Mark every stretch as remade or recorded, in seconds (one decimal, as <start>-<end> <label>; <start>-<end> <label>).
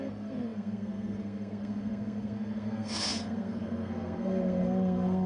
0.0-5.3 remade